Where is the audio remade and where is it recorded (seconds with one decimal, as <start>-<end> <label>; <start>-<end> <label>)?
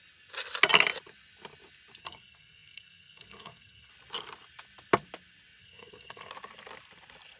0.0-2.0 recorded; 2.0-3.9 remade; 3.9-5.6 recorded; 5.6-6.3 remade; 6.3-7.4 recorded